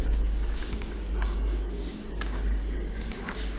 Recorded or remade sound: remade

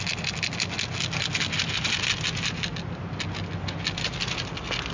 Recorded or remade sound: recorded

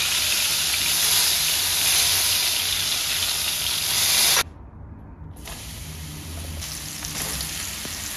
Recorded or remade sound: recorded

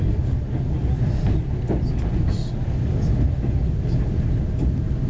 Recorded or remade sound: recorded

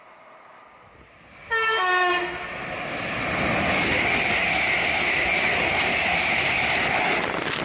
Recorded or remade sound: recorded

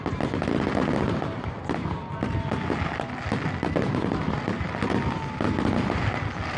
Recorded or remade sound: recorded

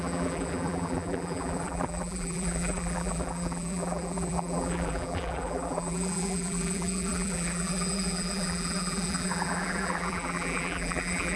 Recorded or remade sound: remade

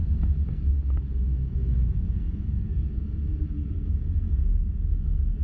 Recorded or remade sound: remade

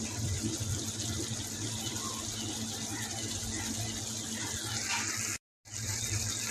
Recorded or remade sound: recorded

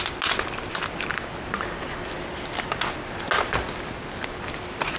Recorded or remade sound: recorded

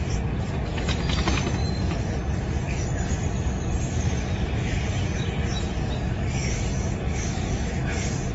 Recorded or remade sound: recorded